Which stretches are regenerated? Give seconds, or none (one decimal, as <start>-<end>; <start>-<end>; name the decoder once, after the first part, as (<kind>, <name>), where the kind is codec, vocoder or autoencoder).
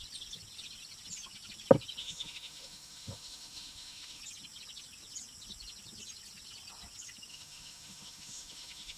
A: 2.0-4.2 (autoencoder, DAC-VAE); 7.3-9.0